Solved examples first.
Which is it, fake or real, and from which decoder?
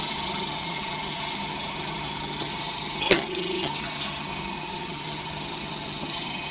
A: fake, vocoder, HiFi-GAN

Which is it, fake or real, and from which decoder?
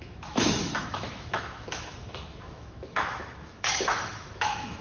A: fake, autoencoder, DAC-VAE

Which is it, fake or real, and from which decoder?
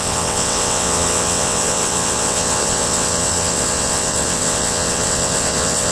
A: fake, vocoder, WaveNeXt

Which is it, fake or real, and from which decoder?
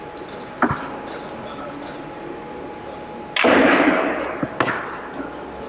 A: real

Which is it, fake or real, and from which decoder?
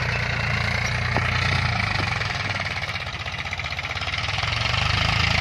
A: real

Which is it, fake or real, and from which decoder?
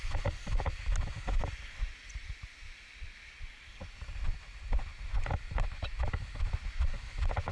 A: real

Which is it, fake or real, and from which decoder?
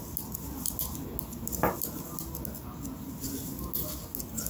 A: real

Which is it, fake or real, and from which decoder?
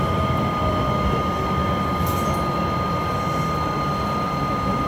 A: real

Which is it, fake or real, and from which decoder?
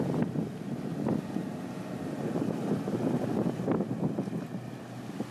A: real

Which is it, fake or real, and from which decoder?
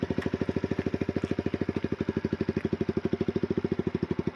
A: real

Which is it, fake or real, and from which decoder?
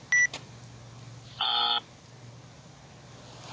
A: real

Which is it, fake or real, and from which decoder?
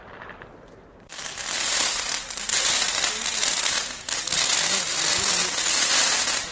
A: real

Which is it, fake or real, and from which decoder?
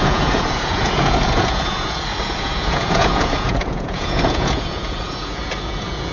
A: fake, vocoder, Vocos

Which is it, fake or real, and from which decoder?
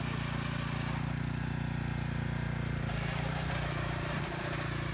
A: real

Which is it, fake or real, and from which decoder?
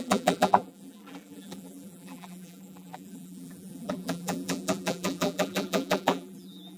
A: fake, vocoder, BigVGAN v2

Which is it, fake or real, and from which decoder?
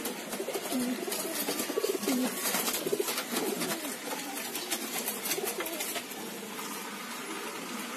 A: real